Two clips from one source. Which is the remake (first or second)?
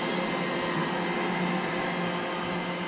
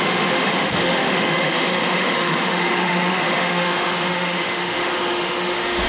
second